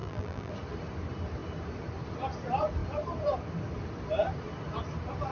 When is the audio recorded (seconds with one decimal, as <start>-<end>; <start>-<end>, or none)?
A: 0.5-5.3